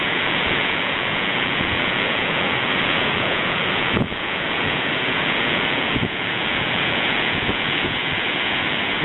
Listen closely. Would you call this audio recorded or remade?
remade